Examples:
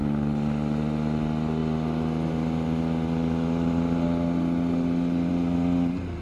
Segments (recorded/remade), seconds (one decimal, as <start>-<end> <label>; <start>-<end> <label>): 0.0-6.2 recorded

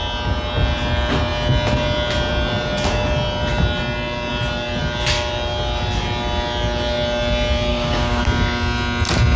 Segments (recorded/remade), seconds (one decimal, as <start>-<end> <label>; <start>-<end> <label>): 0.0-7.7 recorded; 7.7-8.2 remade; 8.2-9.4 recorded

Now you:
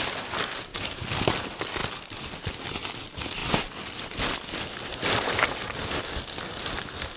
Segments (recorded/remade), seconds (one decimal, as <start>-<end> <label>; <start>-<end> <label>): 0.0-0.7 recorded; 0.7-1.3 remade; 1.3-7.2 recorded

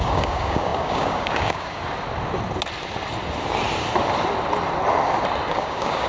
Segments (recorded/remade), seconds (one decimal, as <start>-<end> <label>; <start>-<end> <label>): 0.0-1.8 remade; 1.8-5.5 recorded; 5.5-6.1 remade

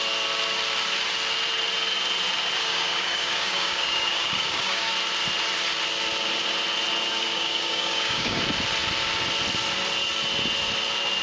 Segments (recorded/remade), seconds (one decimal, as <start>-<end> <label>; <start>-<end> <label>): 0.0-2.6 recorded; 2.6-4.9 remade; 4.9-7.2 recorded; 7.2-8.4 remade; 8.4-11.2 recorded

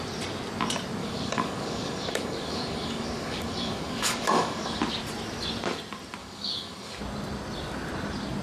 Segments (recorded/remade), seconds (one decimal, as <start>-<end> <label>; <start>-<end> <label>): 0.0-1.0 recorded; 1.0-4.8 remade; 4.8-6.2 recorded; 6.2-7.0 remade; 7.0-8.4 recorded